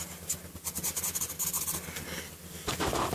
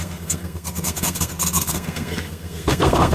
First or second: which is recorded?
first